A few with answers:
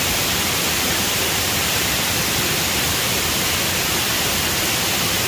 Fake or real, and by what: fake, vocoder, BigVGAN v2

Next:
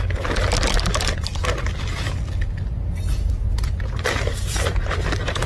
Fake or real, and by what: real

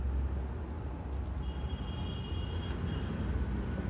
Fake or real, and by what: real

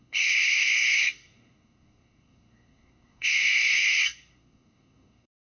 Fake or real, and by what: fake, codec, SNAC